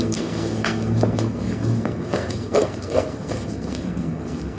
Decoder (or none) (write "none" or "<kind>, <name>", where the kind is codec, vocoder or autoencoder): codec, SNAC